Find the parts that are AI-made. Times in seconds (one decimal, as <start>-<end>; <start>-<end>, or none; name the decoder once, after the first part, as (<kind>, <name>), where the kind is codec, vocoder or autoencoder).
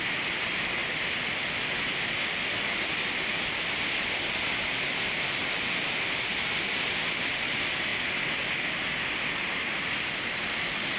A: none